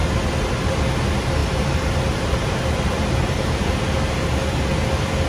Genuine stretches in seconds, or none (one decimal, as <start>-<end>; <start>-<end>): 0.7-1.4; 3.8-5.3